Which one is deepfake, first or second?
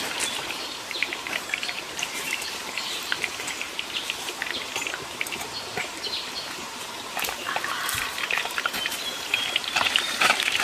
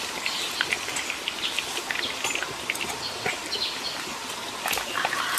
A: first